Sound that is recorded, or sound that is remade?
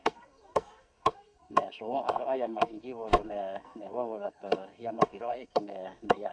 remade